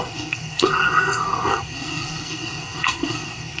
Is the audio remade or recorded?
remade